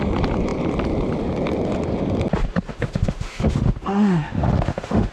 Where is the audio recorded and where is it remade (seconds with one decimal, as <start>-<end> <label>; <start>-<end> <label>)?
0.0-2.7 recorded; 2.7-5.1 remade